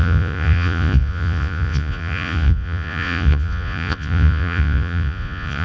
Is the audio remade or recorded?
remade